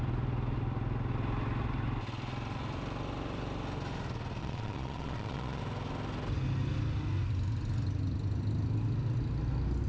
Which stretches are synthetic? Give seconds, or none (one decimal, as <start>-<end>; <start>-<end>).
4.4-5.6